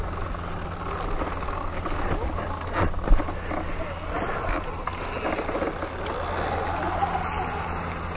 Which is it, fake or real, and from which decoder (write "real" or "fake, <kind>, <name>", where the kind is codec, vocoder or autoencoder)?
real